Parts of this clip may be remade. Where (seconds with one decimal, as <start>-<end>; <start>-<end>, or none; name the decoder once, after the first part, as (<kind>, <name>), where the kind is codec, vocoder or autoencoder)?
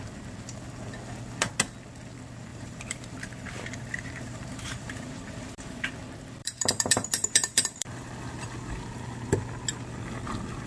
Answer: 2.5-5.9 (vocoder, BigVGAN v2); 6.4-8.1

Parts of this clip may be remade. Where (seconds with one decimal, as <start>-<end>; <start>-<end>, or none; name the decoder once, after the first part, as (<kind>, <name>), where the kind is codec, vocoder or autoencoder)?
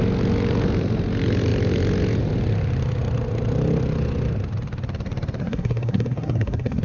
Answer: 5.4-6.8 (codec, SNAC)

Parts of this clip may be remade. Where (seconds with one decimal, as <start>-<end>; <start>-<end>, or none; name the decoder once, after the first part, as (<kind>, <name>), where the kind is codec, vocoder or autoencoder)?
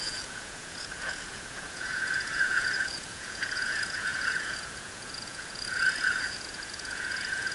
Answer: 0.0-7.5 (vocoder, Vocos)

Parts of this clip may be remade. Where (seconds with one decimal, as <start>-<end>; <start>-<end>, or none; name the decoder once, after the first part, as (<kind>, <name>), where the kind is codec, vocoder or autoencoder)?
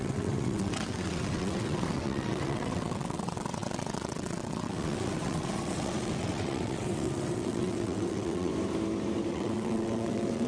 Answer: 0.0-8.5 (vocoder, WaveNeXt); 9.3-10.5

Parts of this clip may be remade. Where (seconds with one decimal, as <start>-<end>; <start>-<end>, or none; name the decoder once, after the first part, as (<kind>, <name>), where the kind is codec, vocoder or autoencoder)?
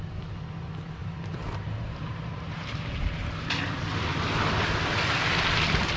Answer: 1.0-3.5 (vocoder, BigVGAN v2)